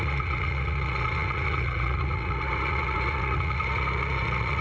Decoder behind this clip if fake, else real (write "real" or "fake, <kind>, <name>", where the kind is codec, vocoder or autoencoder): fake, vocoder, Vocos